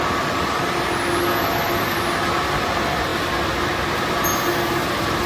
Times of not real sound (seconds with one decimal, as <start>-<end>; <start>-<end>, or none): none